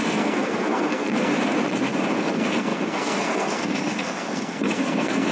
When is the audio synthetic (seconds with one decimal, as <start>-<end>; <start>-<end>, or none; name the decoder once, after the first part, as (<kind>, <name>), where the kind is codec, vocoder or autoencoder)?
0.0-1.3 (codec, SNAC); 2.2-5.3